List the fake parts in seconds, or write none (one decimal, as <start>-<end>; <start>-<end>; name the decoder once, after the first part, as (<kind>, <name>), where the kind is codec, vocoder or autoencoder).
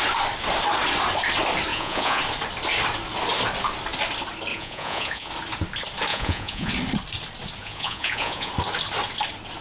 1.7-2.2 (vocoder, Vocos); 4.5-5.3; 6.1-6.7; 7.6-8.5